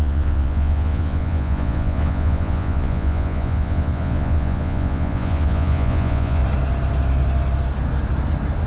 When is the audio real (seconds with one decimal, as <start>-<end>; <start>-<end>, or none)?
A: 6.4-8.7